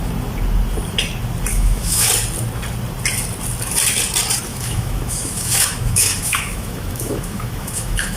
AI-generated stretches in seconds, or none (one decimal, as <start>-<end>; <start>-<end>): 1.5-2.1; 4.5-8.2